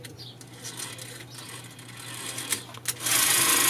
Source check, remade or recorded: recorded